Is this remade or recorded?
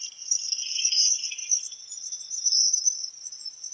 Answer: recorded